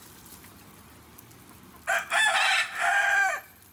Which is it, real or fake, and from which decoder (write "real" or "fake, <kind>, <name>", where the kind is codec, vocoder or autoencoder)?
real